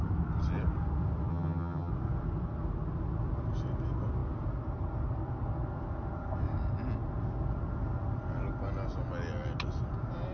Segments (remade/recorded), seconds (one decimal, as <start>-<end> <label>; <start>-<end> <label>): 0.0-1.3 recorded; 1.3-1.9 remade; 1.9-10.3 recorded

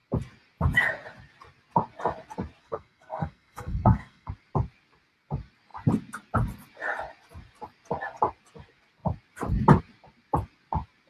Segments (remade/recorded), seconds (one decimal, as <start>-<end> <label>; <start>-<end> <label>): 0.0-2.6 recorded; 2.6-4.3 remade; 4.3-11.1 recorded

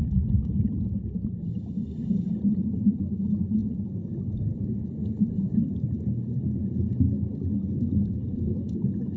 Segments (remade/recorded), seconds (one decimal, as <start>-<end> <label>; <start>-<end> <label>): 0.0-2.0 recorded; 2.0-3.0 remade; 3.0-9.2 recorded